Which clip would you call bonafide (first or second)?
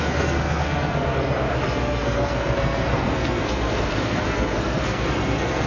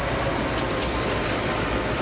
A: second